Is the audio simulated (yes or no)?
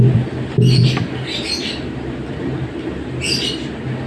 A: no